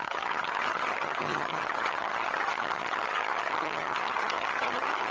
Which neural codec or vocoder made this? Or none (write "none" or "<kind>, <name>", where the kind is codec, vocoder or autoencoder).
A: vocoder, HiFi-GAN